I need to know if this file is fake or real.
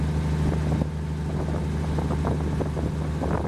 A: real